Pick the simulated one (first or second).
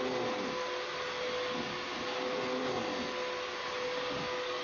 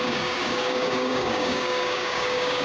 second